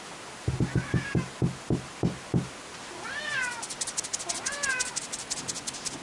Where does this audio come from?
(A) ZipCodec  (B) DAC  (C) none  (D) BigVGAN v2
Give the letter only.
C